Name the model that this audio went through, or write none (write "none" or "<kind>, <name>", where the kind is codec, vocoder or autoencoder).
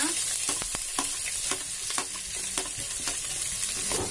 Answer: none